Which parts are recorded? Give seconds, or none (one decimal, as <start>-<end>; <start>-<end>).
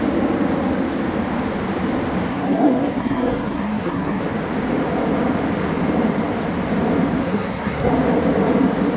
0.0-2.3; 4.2-7.2; 7.9-9.0